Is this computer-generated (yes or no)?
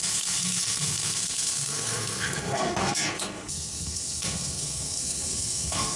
yes